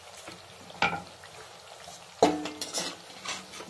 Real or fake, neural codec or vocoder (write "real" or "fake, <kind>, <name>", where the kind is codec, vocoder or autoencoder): real